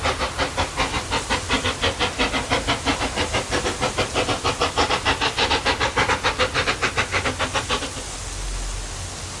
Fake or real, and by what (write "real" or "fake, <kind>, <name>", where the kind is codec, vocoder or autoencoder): real